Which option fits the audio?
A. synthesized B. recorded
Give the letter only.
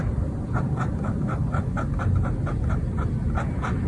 B